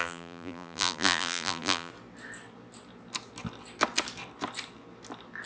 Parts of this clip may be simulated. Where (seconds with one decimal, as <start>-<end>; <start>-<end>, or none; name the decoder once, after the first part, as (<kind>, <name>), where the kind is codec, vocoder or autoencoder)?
0.0-1.9 (vocoder, BigVGAN v2)